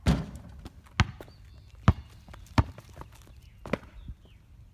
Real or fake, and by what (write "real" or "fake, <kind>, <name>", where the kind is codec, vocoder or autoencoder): real